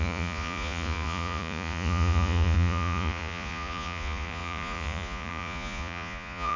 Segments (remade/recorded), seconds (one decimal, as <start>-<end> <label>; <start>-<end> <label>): 0.0-6.6 remade